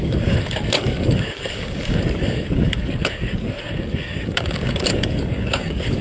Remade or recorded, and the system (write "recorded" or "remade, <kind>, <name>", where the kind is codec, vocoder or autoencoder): remade, codec, DAC